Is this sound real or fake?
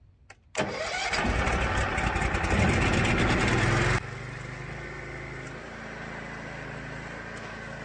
real